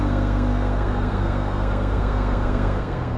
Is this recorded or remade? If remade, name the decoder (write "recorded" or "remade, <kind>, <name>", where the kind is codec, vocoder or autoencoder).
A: remade, codec, SNAC